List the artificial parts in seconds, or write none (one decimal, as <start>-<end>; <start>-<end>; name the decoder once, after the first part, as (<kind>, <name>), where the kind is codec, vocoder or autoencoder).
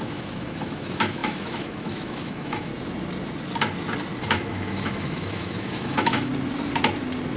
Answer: 0.0-2.7 (autoencoder, DAC-VAE); 4.3-6.3